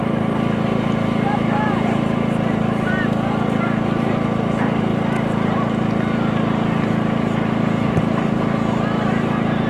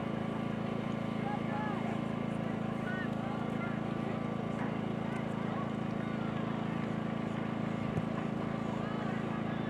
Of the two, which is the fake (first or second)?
first